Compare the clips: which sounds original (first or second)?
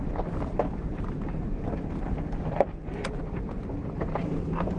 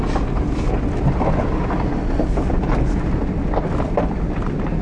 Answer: second